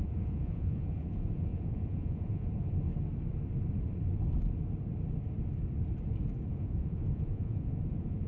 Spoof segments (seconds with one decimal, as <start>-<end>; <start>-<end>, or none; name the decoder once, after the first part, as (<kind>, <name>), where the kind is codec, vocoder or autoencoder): 0.0-2.9 (vocoder, Vocos); 6.5-8.3